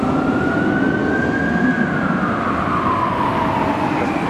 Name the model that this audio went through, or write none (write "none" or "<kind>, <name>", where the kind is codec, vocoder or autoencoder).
none